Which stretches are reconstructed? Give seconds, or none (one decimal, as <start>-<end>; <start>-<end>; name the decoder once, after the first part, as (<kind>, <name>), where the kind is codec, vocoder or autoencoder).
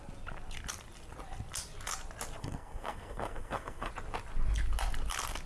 2.4-3.9 (codec, SNAC)